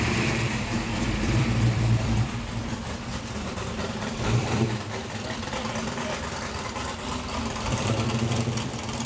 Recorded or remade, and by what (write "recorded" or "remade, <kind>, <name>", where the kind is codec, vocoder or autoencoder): remade, vocoder, BigVGAN v2